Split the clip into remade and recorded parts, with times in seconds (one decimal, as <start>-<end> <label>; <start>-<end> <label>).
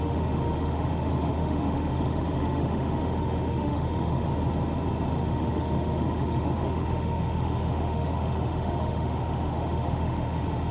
0.0-4.3 remade; 4.3-5.1 recorded; 5.1-10.7 remade